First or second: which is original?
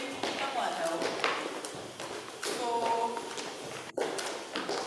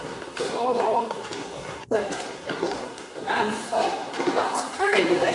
first